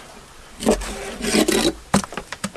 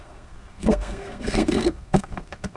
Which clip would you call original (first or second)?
first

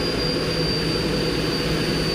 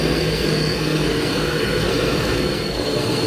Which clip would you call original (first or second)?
first